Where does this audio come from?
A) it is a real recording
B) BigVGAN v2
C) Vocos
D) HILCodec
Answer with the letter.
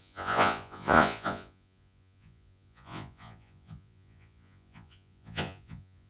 C